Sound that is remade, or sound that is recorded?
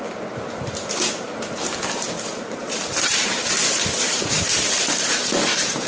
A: remade